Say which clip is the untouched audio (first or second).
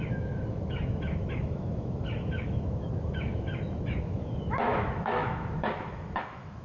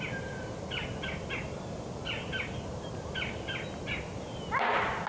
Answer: second